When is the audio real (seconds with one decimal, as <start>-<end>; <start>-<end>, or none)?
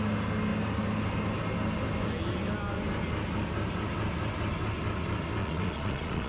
0.0-5.4